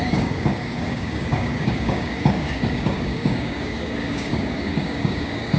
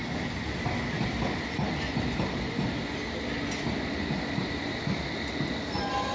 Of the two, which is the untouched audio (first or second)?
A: second